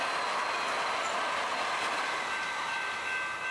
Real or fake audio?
real